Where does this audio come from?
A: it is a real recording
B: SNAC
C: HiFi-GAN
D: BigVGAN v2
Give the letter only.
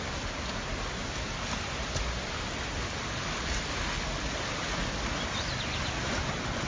A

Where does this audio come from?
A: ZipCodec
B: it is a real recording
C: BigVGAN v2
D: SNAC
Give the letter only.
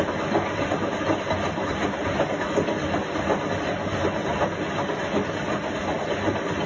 B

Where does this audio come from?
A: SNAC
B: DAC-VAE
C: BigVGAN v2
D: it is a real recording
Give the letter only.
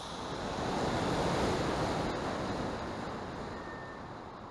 D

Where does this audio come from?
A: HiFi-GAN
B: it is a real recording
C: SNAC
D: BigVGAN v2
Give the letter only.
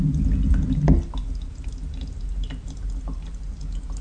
B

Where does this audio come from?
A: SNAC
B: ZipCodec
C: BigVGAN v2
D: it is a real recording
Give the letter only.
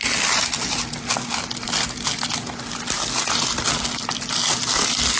D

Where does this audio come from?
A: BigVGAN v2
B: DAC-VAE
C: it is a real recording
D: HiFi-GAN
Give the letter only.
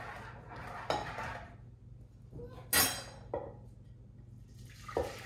C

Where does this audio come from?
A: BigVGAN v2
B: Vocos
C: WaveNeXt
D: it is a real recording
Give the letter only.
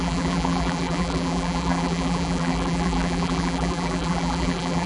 A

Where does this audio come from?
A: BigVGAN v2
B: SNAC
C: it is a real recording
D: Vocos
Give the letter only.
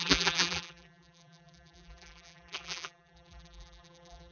A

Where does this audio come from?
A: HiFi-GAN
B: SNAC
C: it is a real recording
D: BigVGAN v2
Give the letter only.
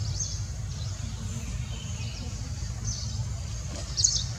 C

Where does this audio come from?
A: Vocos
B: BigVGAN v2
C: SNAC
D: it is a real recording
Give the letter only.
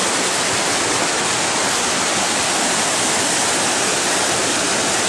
D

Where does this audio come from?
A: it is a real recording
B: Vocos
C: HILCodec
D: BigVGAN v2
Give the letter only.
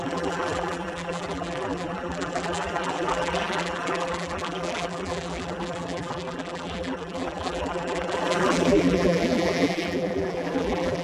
D